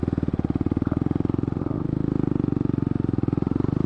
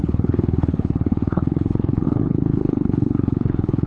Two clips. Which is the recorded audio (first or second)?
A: first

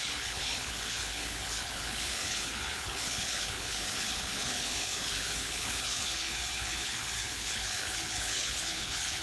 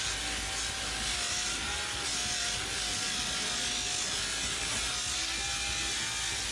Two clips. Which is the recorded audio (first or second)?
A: second